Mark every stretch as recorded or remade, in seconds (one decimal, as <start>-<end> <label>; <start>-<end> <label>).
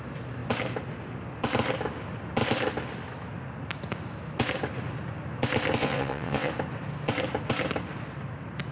0.0-5.8 recorded; 5.8-6.5 remade; 6.5-8.7 recorded